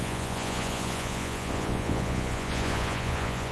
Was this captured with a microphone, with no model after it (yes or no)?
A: no